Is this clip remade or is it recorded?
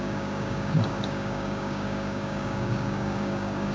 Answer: remade